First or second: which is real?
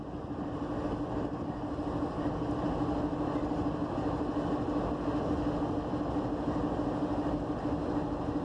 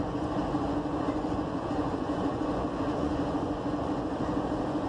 first